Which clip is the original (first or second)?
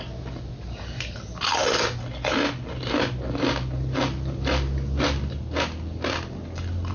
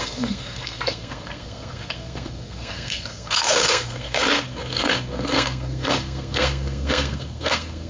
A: first